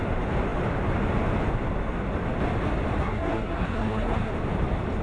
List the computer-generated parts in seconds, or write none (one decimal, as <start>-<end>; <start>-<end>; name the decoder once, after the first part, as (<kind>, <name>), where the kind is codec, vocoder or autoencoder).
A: 3.0-4.3 (codec, SNAC)